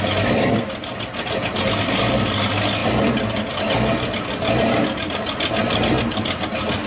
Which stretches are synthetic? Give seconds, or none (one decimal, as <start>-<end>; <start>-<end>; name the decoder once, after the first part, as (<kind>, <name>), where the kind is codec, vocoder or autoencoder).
none